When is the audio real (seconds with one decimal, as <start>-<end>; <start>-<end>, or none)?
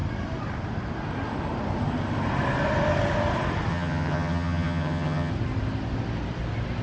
0.0-3.7; 5.3-6.8